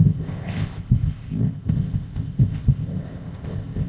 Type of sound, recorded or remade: remade